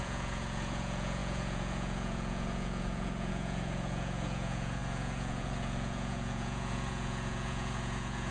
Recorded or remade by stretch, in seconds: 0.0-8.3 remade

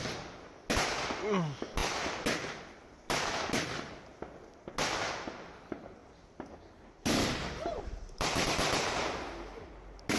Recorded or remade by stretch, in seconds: 0.0-10.2 recorded

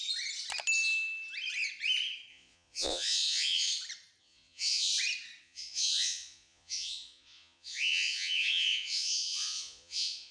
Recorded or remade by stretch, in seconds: 0.0-2.3 recorded; 2.3-3.7 remade; 3.7-4.2 recorded; 4.2-4.9 remade; 4.9-5.4 recorded; 5.4-10.3 remade